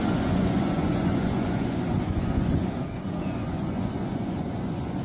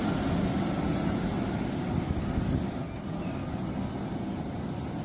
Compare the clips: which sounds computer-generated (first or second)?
first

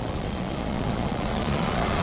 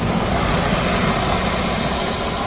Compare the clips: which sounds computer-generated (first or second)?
first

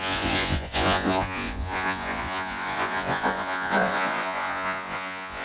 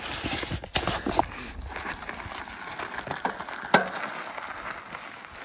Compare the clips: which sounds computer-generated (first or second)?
first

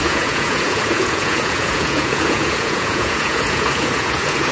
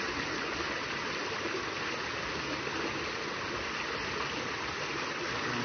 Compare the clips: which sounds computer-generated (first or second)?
first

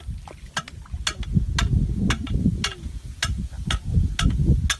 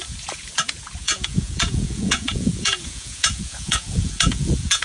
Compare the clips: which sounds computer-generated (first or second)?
second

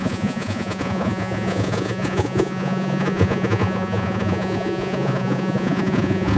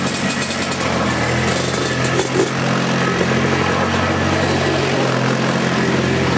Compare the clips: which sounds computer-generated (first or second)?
first